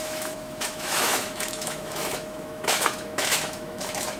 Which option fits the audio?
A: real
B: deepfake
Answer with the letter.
B